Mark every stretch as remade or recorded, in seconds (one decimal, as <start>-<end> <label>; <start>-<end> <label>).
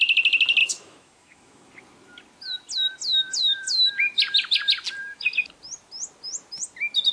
0.0-0.6 recorded; 0.6-1.7 remade; 1.7-7.1 recorded